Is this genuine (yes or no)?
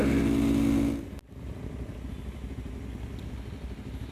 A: yes